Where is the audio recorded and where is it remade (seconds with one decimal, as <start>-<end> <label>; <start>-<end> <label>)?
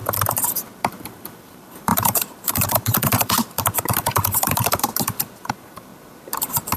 0.0-0.8 recorded; 0.8-4.9 remade; 4.9-5.5 recorded; 5.5-5.9 remade; 5.9-6.8 recorded